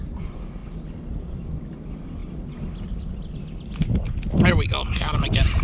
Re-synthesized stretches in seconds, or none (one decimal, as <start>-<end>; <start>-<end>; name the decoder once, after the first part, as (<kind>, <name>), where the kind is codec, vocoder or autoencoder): 0.6-1.6 (vocoder, BigVGAN v2)